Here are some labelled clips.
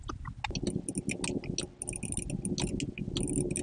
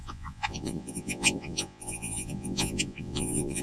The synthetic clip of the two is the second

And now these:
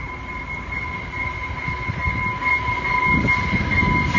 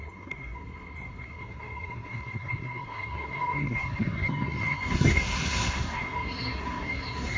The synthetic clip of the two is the second